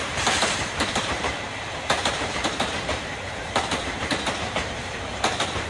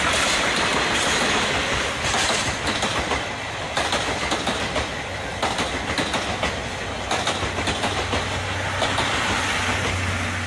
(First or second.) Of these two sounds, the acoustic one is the second